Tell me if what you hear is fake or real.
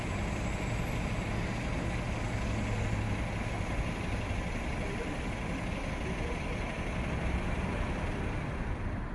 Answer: real